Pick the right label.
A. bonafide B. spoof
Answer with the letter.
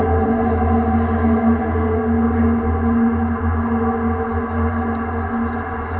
A